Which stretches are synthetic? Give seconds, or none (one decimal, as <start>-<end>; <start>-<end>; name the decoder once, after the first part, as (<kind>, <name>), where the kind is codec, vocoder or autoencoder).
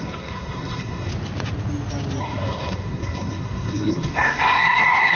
0.0-1.1 (codec, SNAC); 2.2-5.2